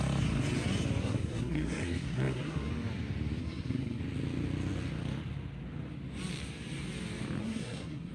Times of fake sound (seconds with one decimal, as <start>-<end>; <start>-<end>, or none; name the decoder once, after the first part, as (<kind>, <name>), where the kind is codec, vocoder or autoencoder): 1.0-2.7 (codec, SNAC); 3.4-4.0; 7.4-8.1